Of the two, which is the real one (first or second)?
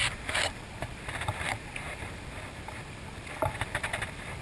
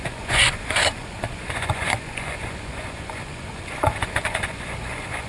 first